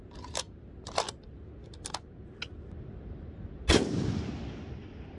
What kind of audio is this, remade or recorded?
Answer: recorded